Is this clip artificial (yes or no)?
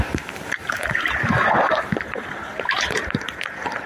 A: yes